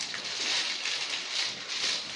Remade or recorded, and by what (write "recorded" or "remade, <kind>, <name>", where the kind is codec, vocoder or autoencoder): recorded